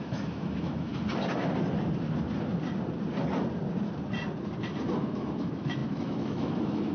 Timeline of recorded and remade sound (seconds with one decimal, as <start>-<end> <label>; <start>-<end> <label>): 0.0-0.9 remade; 0.9-5.0 recorded; 5.0-6.9 remade